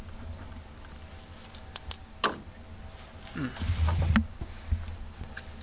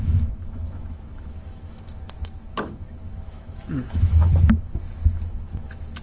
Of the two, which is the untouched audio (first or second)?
first